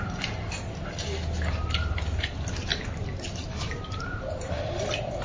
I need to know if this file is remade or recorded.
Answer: recorded